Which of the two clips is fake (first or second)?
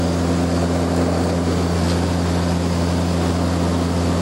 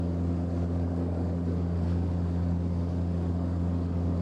second